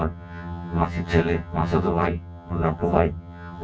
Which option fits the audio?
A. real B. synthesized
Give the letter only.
B